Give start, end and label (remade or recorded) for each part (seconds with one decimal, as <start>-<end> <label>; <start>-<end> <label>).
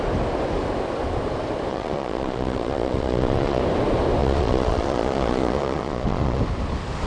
0.0-1.7 recorded; 1.7-3.6 remade; 3.6-4.2 recorded; 4.2-6.4 remade; 6.4-7.1 recorded